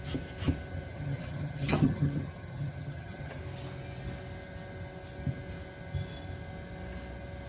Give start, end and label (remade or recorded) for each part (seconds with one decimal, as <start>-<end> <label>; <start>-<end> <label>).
0.0-0.9 recorded; 0.9-3.4 remade; 3.4-7.5 recorded